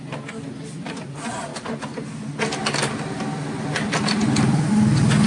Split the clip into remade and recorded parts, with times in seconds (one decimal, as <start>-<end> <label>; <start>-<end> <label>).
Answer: 0.0-5.3 recorded